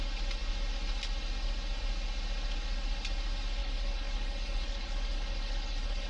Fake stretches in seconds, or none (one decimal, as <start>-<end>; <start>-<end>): 3.6-6.1